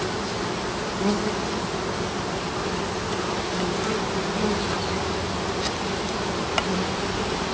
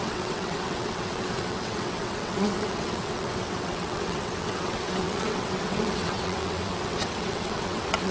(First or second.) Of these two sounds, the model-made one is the second